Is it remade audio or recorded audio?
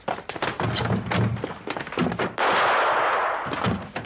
recorded